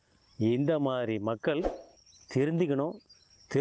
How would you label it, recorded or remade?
recorded